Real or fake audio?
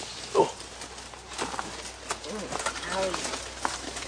real